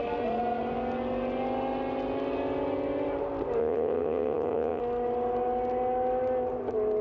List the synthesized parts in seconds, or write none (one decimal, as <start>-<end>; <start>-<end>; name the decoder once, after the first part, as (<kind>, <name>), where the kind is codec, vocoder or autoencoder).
3.6-4.8 (vocoder, HiFi-GAN)